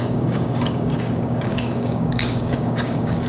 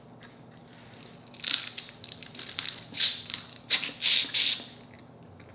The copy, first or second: first